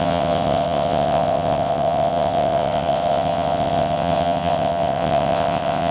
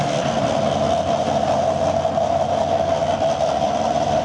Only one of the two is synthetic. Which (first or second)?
first